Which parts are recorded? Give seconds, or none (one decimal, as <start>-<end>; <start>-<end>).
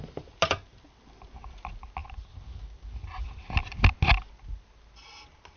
0.0-5.6